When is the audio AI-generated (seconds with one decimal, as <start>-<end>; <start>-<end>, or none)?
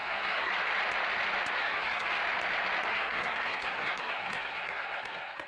0.0-0.5; 1.6-2.1; 2.9-5.5